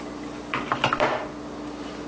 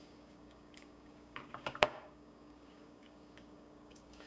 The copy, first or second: second